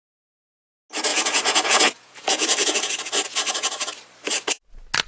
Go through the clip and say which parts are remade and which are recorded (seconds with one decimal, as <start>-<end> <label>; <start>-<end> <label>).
0.0-1.1 recorded; 1.1-3.9 remade; 3.9-5.1 recorded